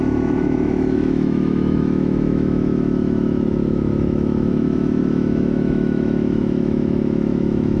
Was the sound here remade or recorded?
remade